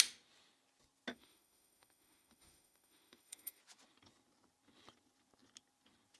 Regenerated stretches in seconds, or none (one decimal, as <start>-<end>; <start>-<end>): 1.1-3.6